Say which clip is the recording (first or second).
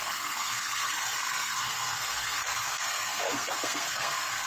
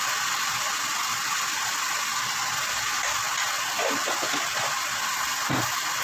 second